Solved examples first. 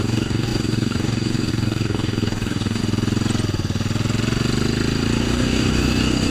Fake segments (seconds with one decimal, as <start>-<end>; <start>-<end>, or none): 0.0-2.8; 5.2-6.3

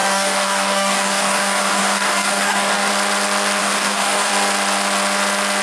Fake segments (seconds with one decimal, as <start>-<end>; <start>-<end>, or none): 0.0-2.9; 3.6-4.3

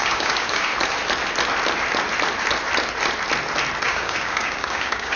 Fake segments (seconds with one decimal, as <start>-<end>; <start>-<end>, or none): 0.0-0.7; 3.8-5.2